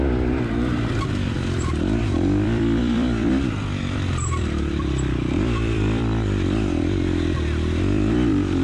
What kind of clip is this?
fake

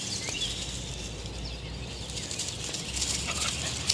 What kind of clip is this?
real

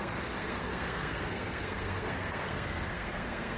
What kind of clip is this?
fake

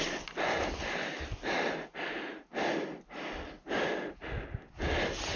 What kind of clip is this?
real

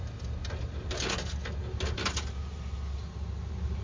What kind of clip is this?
real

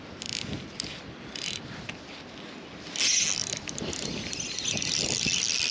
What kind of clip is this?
real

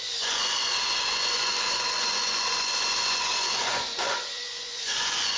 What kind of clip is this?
fake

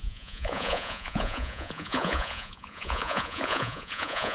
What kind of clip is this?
fake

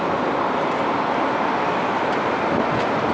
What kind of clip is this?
real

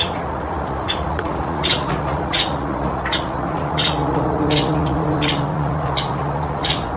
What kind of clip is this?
fake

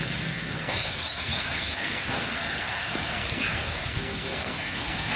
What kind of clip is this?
fake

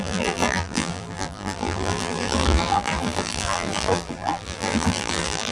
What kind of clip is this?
fake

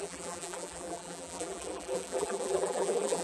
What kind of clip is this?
fake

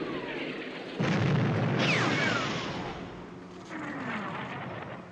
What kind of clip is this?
real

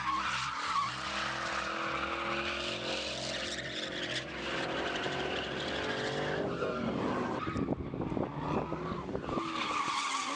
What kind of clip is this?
real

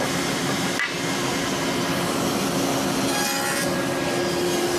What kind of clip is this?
real